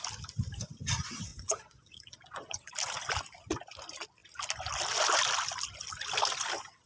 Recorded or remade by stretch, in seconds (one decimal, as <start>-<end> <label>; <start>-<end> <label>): 0.0-1.3 recorded; 1.3-2.7 remade; 2.7-6.9 recorded

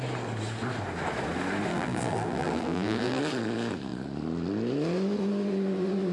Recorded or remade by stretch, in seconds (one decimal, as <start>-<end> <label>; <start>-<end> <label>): 0.0-1.7 recorded; 1.7-3.2 remade; 3.2-6.1 recorded

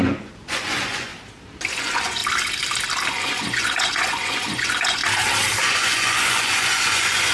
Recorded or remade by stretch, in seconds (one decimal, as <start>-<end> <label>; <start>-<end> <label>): 0.0-1.1 remade; 1.1-1.7 recorded; 1.7-2.2 remade; 2.2-3.1 recorded; 3.1-5.0 remade; 5.0-5.6 recorded; 5.6-7.3 remade

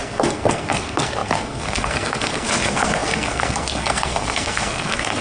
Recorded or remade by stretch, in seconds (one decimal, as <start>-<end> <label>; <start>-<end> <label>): 0.0-5.2 remade

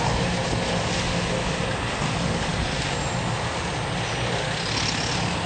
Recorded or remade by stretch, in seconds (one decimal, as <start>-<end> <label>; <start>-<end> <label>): 0.0-5.5 recorded